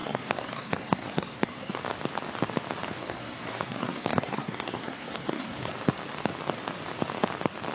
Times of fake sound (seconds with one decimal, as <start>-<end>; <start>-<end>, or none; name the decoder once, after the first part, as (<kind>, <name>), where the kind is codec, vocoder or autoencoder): 0.0-1.7 (codec, SNAC); 3.0-5.7